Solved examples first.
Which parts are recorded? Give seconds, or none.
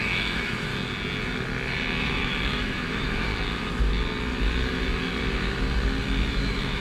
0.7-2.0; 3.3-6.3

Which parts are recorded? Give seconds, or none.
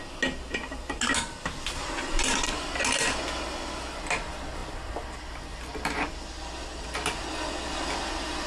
0.0-8.5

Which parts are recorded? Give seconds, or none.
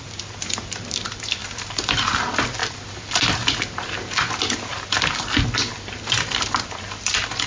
none